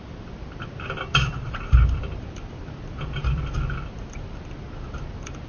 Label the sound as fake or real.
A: fake